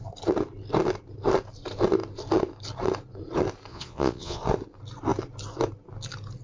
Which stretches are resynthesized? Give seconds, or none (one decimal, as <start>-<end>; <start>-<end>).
3.7-4.4